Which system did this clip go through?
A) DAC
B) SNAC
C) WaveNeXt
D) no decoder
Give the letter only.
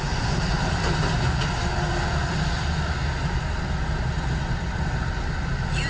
D